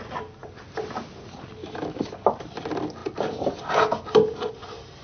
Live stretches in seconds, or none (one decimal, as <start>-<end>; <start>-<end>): 0.0-1.6; 2.1-5.0